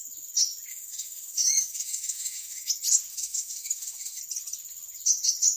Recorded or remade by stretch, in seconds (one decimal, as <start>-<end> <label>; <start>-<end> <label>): 0.0-0.7 recorded; 0.7-2.7 remade; 2.7-3.1 recorded; 3.1-4.2 remade; 4.2-5.6 recorded